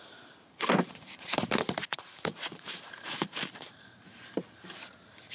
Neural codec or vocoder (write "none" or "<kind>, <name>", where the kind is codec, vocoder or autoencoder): vocoder, BigVGAN v2